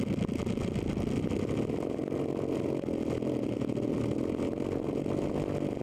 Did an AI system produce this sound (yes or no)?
no